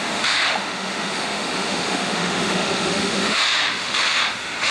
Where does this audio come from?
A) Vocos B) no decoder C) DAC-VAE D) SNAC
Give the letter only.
C